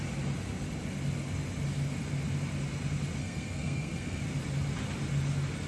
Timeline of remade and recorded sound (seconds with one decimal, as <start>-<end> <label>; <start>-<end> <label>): 0.0-3.2 recorded; 3.2-4.2 remade; 4.2-5.7 recorded